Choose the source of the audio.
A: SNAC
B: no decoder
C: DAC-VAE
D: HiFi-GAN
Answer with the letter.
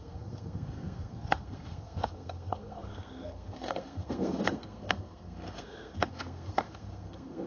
A